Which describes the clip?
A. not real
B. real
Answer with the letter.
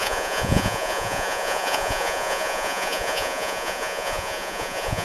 A